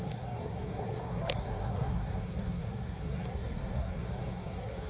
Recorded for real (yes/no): no